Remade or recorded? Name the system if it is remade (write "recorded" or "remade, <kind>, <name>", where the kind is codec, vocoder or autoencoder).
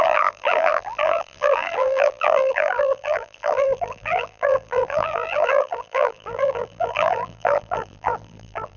remade, vocoder, BigVGAN v2